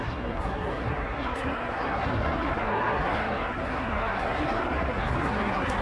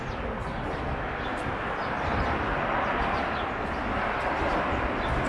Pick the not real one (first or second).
first